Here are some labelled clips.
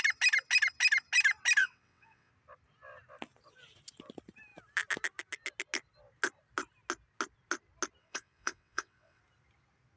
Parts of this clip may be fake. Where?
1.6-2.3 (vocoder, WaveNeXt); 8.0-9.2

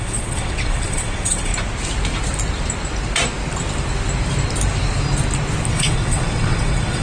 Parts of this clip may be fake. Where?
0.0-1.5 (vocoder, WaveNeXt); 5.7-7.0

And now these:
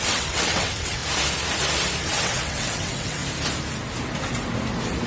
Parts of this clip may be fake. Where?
0.0-1.0 (vocoder, WaveNeXt); 2.0-3.2